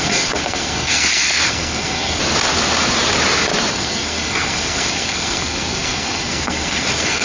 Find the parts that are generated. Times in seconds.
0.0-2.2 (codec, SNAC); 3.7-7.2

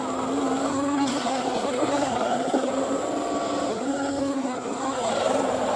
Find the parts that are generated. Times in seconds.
0.7-2.7 (codec, SNAC); 3.7-5.1

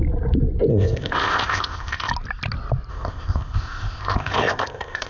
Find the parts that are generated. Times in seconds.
0.7-2.1 (codec, ZipCodec); 2.9-5.1

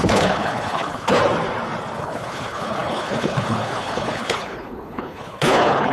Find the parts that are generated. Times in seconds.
0.0-1.2 (codec, HILCodec); 2.0-5.9

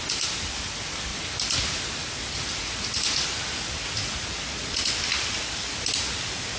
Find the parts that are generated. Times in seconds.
none

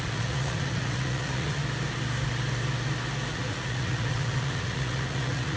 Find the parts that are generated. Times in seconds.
0.0-1.6 (vocoder, Vocos); 3.3-5.6